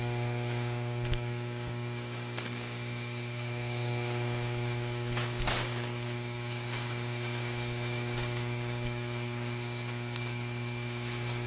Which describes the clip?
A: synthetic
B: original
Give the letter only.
A